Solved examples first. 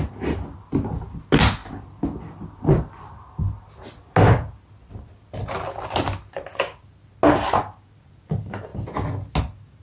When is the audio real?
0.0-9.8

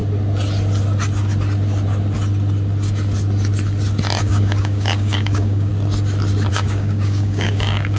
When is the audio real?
0.0-4.2; 5.7-6.5

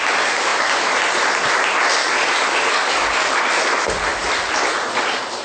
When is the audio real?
0.0-2.0; 3.4-5.4